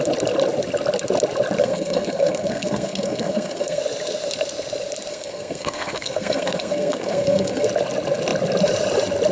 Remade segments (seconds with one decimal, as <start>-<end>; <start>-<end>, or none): 1.6-3.8; 5.1-7.7